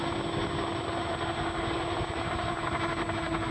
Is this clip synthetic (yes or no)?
no